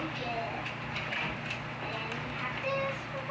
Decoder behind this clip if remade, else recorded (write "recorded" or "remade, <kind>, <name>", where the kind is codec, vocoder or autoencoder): recorded